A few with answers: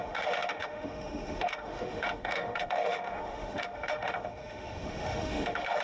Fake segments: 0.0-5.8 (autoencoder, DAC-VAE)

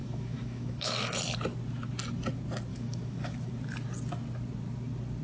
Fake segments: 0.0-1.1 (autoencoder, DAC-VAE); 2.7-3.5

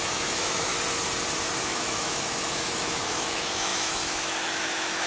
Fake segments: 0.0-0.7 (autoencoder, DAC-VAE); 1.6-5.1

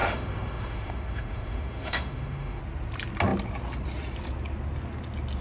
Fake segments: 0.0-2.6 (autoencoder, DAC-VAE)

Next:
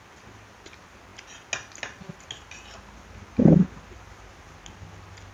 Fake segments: none

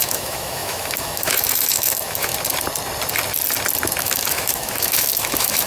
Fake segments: 0.0-2.3 (autoencoder, DAC-VAE); 4.0-5.7

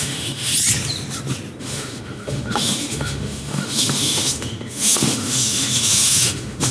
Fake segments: 0.0-0.5 (autoencoder, DAC-VAE); 1.6-6.7